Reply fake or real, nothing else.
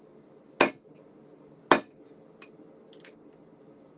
real